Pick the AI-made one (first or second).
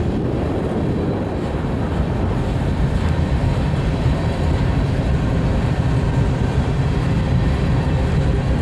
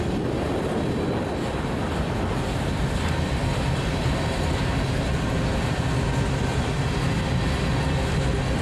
first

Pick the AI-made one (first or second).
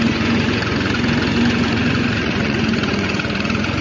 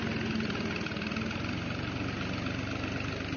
first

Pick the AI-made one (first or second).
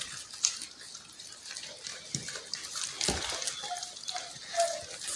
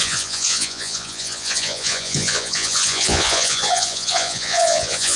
second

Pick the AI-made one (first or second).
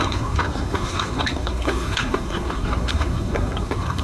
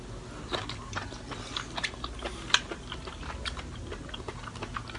first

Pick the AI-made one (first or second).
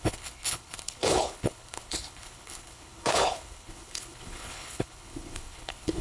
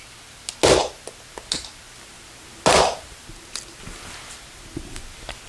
first